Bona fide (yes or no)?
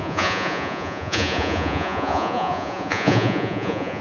no